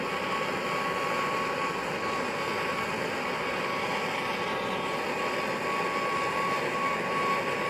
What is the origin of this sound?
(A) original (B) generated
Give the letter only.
A